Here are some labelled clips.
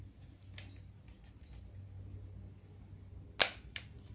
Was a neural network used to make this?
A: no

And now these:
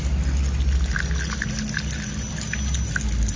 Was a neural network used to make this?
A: no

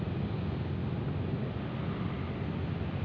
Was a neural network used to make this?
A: no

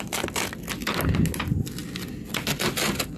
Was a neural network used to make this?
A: no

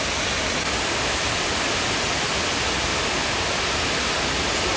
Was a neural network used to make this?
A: no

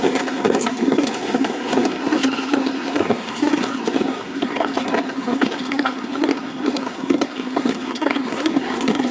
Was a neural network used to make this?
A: yes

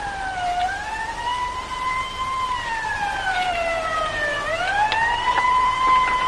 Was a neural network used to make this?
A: yes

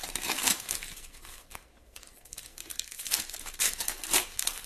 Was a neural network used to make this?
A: yes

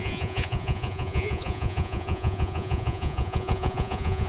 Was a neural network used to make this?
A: yes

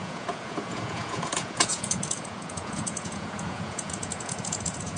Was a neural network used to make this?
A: yes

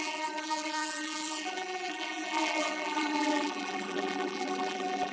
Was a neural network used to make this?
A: yes